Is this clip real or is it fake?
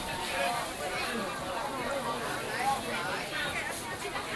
real